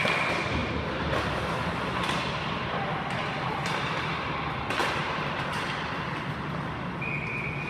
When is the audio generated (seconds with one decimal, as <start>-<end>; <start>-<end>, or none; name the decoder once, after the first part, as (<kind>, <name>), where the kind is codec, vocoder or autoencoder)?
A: 0.6-1.4 (vocoder, BigVGAN v2); 4.8-5.5